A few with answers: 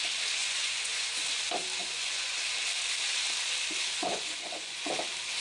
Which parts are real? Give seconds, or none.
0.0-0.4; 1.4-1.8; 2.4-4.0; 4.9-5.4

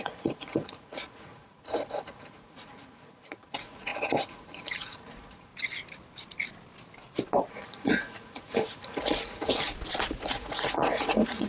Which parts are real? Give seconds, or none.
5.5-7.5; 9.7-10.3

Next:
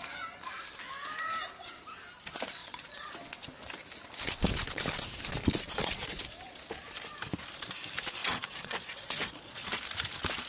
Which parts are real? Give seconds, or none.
0.0-2.6; 3.1-5.4; 6.2-8.2; 9.7-10.5

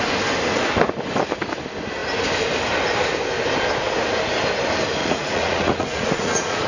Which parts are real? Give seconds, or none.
0.0-5.0

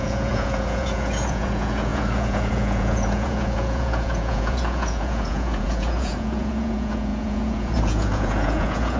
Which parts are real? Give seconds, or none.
none